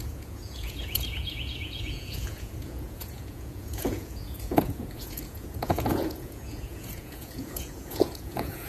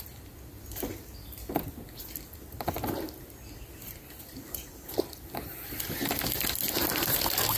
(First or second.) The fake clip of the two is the first